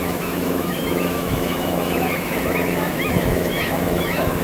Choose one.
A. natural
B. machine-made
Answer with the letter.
B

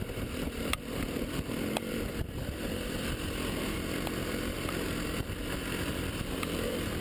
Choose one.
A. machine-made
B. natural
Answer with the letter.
A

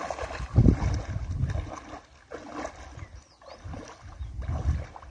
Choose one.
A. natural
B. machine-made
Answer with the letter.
A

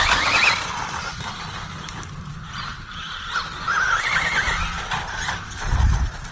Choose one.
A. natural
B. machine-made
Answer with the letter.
A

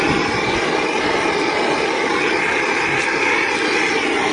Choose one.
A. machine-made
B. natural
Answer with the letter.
B